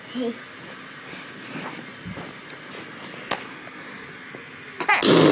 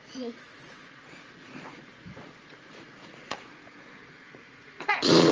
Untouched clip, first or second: first